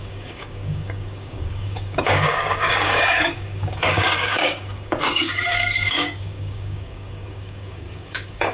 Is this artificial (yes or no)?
yes